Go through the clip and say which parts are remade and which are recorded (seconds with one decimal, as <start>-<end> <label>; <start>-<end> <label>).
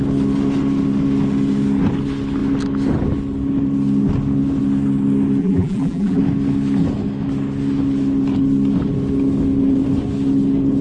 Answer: 0.0-5.4 recorded; 5.4-6.2 remade; 6.2-10.8 recorded